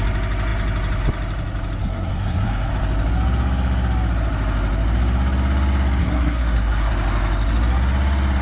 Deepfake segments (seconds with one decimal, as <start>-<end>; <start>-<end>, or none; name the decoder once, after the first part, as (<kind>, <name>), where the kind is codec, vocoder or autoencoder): 1.8-2.7 (codec, SNAC); 6.0-6.9

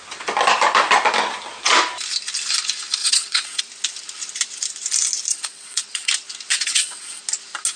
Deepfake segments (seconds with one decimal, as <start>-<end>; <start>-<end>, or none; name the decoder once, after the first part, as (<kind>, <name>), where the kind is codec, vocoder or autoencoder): 3.0-3.6 (vocoder, WaveNeXt); 5.3-6.1; 6.5-7.2

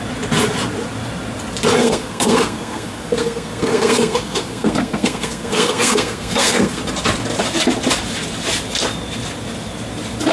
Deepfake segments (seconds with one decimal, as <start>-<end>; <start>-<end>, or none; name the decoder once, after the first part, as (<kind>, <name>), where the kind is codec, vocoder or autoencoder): 1.8-6.8 (codec, SNAC)

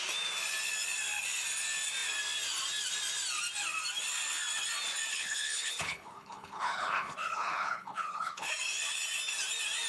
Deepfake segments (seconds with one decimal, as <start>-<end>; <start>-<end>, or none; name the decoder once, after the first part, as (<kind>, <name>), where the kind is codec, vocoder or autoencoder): 5.1-8.5 (codec, HILCodec)

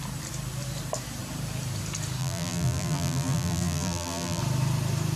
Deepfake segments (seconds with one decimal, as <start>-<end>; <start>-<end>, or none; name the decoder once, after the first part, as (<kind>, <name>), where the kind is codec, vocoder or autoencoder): 2.2-4.4 (vocoder, BigVGAN v2)